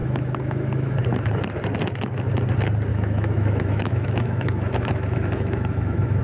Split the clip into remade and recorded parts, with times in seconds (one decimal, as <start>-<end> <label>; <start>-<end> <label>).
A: 0.0-0.9 remade; 0.9-2.9 recorded; 2.9-6.2 remade